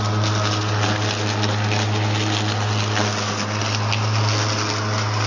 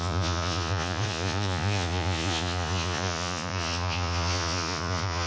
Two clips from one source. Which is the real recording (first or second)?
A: first